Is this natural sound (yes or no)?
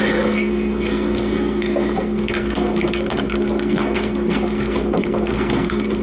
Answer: no